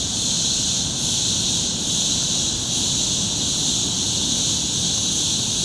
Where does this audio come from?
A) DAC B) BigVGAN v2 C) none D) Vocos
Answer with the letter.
C